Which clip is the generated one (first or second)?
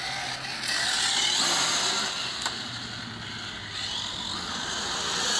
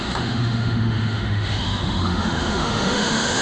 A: second